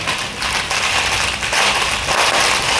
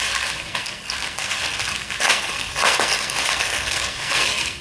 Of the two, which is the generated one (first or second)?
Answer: second